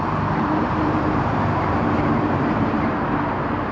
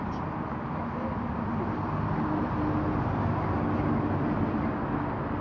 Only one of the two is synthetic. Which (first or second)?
first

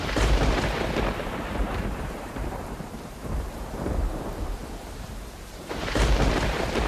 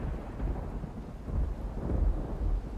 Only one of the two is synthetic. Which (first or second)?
first